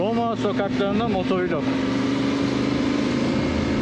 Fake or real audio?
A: real